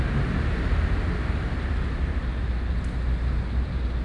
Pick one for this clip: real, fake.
real